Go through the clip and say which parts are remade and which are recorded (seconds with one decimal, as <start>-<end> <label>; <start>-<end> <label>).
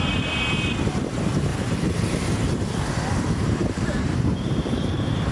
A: 0.0-1.5 recorded; 1.5-2.8 remade; 2.8-3.6 recorded; 3.6-5.3 remade